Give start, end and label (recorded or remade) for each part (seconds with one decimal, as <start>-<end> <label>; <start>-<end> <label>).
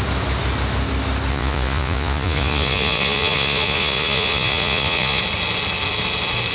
0.0-1.3 recorded; 1.3-5.2 remade; 5.2-6.5 recorded